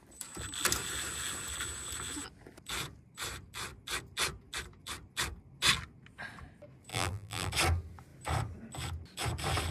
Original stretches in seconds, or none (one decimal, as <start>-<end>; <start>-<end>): 0.0-6.9; 7.5-9.7